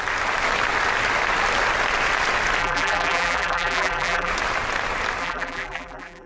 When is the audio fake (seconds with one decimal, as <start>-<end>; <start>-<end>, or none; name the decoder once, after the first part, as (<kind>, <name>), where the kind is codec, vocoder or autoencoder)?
2.6-4.3 (vocoder, BigVGAN v2); 5.2-6.3